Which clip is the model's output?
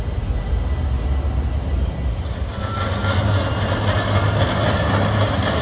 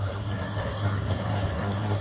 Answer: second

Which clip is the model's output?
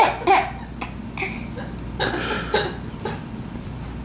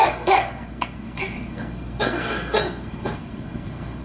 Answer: second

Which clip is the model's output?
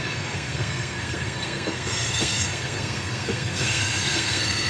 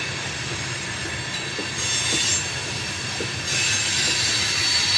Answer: first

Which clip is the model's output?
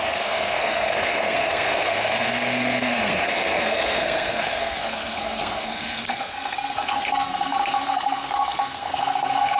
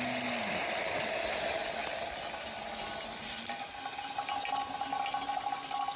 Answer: first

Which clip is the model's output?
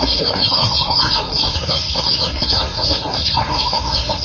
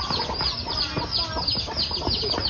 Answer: first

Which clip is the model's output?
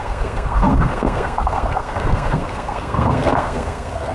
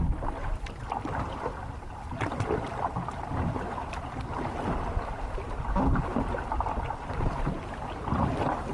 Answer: first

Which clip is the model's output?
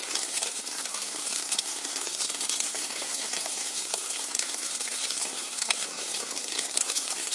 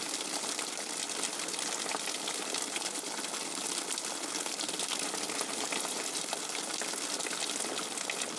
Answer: first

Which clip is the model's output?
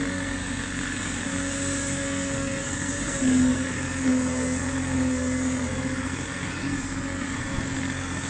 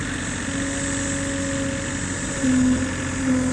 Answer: first